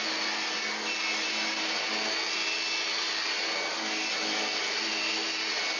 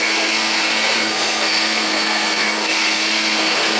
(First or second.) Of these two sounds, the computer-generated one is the second